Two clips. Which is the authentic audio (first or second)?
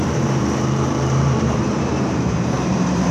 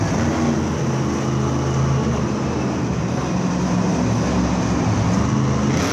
second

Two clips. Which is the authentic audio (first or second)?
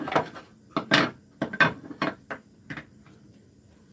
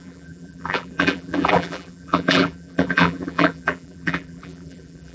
first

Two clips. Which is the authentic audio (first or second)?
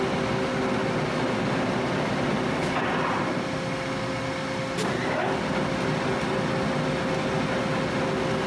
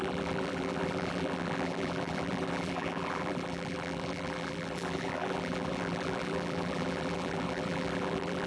first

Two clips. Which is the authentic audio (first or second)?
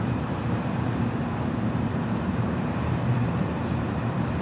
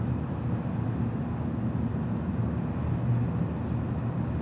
second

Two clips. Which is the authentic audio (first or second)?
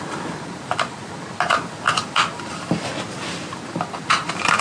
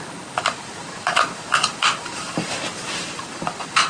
first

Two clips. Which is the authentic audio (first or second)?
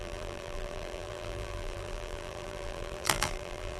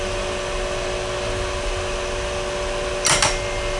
second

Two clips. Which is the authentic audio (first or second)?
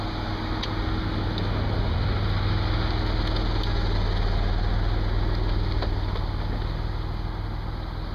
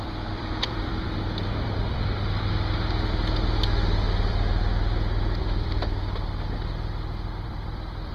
first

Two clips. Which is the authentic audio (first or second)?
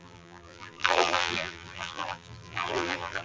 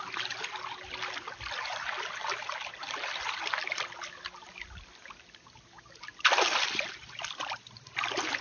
second